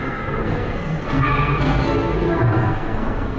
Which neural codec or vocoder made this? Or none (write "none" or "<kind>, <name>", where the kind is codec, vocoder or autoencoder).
codec, SNAC